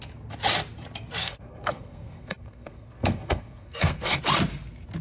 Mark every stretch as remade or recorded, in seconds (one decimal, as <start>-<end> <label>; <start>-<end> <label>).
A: 0.0-1.2 recorded; 1.2-4.2 remade; 4.2-5.0 recorded